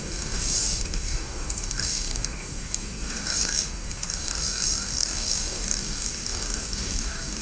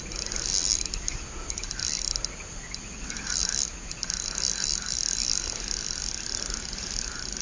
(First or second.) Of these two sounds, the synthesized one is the first